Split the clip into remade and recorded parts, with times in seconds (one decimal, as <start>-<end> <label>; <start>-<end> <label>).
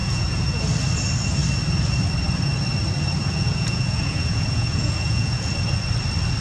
0.0-0.6 remade; 0.6-3.2 recorded; 3.2-5.5 remade; 5.5-6.4 recorded